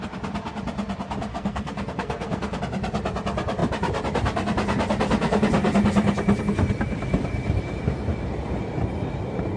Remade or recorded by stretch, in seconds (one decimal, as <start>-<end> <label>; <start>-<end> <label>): 0.0-1.3 recorded; 1.3-2.6 remade; 2.6-9.6 recorded